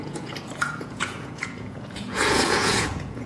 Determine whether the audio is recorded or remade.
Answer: remade